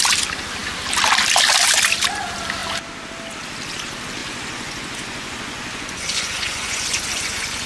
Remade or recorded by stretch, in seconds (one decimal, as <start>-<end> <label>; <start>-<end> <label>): 0.0-4.2 recorded; 4.2-7.7 remade